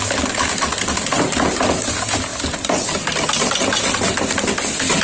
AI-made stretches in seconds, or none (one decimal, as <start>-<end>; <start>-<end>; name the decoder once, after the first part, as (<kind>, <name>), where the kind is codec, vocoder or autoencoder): none